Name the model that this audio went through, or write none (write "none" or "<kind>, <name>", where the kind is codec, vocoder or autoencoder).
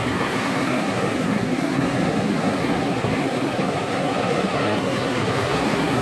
codec, SNAC